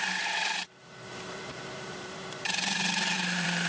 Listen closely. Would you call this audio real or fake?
fake